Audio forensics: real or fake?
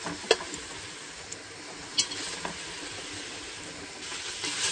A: real